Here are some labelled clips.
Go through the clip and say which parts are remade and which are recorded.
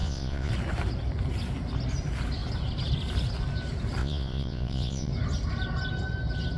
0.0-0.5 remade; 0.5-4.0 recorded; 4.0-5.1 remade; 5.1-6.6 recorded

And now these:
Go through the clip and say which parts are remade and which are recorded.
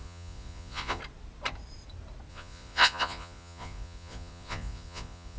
0.0-1.0 remade; 1.0-2.3 recorded; 2.3-5.4 remade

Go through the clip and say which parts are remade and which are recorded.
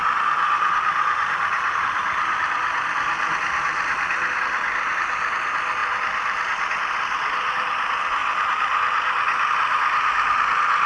0.0-10.9 recorded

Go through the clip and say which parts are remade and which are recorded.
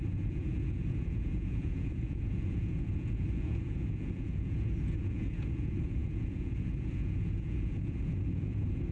0.0-8.9 remade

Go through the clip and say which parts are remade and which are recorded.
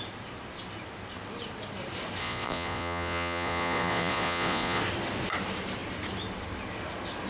0.0-2.2 recorded; 2.2-4.8 remade; 4.8-7.3 recorded